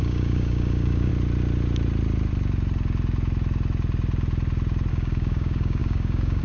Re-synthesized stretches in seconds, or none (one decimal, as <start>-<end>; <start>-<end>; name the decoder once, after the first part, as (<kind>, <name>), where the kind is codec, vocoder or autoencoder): 0.0-1.1 (codec, DAC); 4.9-6.4